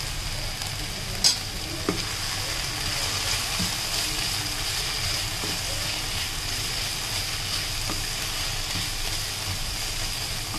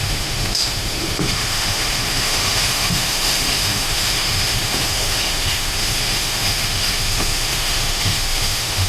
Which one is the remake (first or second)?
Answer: second